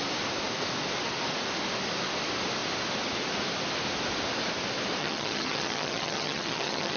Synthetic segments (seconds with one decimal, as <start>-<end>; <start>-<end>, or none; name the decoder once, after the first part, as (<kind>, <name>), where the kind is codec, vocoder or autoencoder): 5.0-7.0 (vocoder, HiFi-GAN)